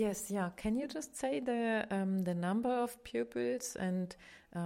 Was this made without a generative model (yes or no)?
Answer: no